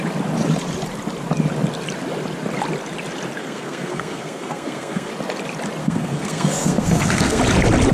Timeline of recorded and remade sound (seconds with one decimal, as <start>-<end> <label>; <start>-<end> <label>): 0.0-3.4 recorded; 3.4-5.1 remade; 5.1-5.8 recorded; 5.8-7.4 remade; 7.4-7.9 recorded